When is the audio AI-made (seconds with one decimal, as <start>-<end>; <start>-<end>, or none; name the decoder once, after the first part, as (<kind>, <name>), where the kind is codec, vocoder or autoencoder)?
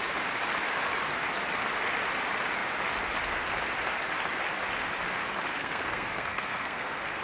5.6-7.2 (codec, SNAC)